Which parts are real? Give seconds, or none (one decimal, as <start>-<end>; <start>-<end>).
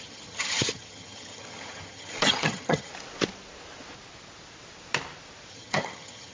2.9-5.5